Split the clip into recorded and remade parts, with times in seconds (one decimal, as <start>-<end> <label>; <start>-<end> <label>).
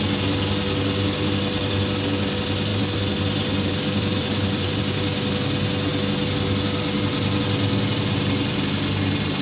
0.0-2.7 recorded; 2.7-4.8 remade; 4.8-9.4 recorded